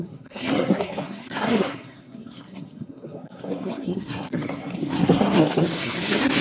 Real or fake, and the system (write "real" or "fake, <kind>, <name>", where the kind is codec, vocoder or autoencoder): fake, codec, SNAC